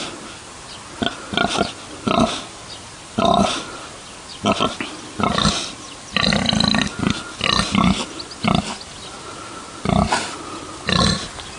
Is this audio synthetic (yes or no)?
no